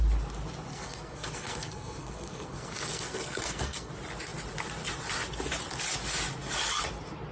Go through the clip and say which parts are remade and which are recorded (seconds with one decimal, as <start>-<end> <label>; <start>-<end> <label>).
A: 0.0-0.7 recorded; 0.7-3.9 remade; 3.9-7.3 recorded